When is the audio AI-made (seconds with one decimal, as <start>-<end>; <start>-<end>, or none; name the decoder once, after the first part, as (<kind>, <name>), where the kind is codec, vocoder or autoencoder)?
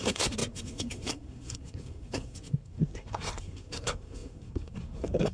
0.0-5.3 (codec, SNAC)